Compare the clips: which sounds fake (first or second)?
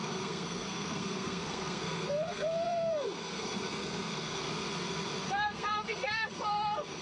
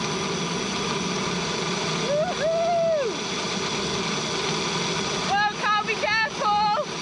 first